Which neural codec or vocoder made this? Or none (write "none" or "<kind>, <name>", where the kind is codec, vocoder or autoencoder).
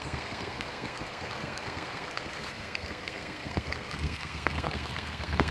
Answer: codec, SNAC